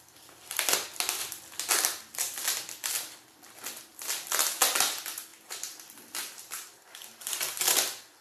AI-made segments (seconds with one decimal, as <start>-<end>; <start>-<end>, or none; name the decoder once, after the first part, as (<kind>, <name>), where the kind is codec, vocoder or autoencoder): 3.9-4.6 (vocoder, BigVGAN v2); 5.3-7.3

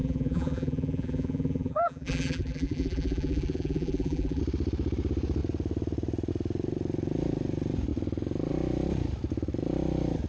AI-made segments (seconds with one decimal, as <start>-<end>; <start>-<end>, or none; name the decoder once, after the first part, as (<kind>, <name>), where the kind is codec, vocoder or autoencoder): 0.0-4.4 (vocoder, BigVGAN v2)

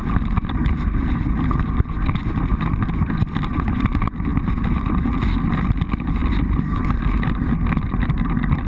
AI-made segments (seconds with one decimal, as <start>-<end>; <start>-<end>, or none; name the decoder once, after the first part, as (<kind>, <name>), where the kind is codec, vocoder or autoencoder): 0.0-0.7 (vocoder, BigVGAN v2)